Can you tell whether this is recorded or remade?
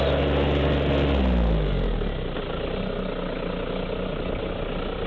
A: recorded